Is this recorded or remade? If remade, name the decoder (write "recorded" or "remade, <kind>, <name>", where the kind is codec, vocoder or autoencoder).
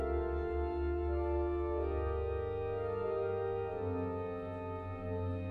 recorded